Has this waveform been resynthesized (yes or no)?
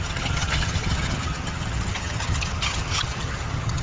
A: yes